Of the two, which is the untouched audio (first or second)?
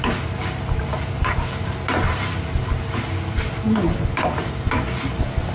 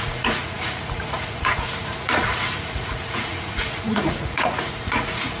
first